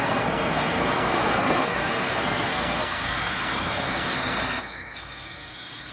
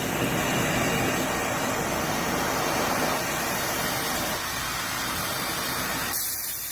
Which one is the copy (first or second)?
first